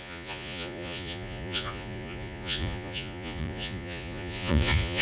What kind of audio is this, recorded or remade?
remade